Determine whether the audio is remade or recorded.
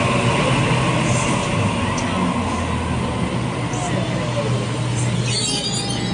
recorded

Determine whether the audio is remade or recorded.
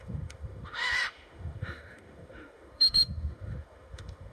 remade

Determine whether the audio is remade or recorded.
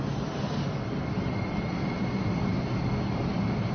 recorded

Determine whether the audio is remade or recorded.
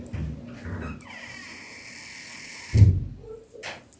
recorded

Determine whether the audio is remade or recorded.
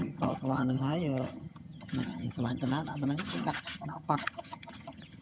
remade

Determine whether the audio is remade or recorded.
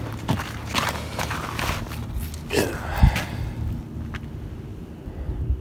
recorded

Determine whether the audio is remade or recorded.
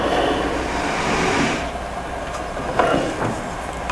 recorded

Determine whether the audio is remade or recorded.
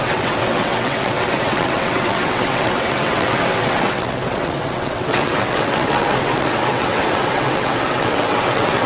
remade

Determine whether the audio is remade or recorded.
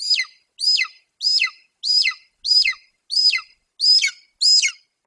recorded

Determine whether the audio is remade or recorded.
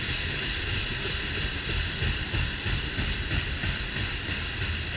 remade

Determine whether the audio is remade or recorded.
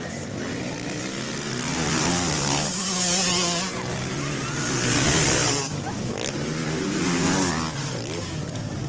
recorded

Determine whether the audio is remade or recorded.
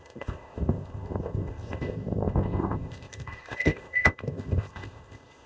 remade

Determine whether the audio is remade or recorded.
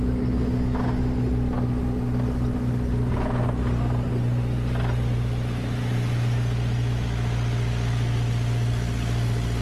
recorded